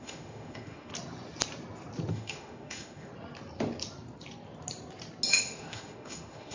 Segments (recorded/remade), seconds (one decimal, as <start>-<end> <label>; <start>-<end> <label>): 0.0-0.9 remade; 0.9-2.1 recorded; 2.1-3.1 remade; 3.1-5.3 recorded; 5.3-6.5 remade